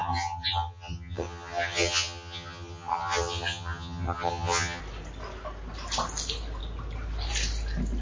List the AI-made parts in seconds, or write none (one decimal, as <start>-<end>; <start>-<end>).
0.0-4.8